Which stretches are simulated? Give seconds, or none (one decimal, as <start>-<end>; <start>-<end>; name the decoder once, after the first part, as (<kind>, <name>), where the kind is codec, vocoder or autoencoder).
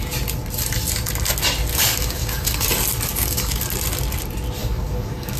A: 1.7-2.7 (codec, DAC); 3.1-3.6; 4.6-5.4